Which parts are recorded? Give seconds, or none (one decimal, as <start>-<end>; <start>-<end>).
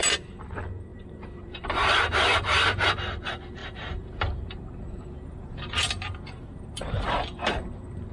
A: 0.0-0.9; 2.9-3.6; 7.1-8.1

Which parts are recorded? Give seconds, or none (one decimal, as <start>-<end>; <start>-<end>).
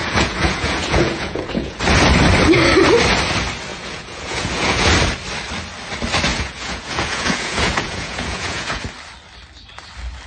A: 1.8-3.7; 4.9-6.3; 8.8-10.3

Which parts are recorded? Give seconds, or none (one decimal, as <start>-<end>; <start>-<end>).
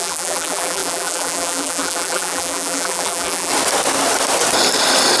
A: 3.5-5.2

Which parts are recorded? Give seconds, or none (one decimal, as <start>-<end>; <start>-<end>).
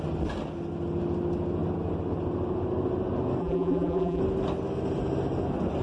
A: 0.0-3.4; 4.2-5.8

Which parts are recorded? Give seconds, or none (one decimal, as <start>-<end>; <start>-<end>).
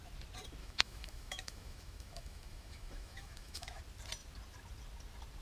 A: 0.0-0.6; 3.8-5.4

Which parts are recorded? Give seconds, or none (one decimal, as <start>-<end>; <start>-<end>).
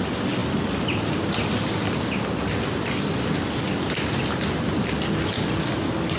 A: 0.0-6.2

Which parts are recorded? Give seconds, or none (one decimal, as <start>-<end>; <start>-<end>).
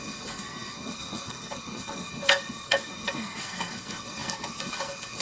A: none